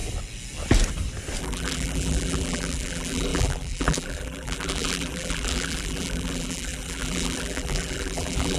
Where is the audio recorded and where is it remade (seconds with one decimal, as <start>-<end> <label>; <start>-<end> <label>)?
0.0-1.4 recorded; 1.4-8.6 remade